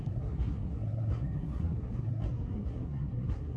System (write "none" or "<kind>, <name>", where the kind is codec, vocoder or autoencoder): codec, SNAC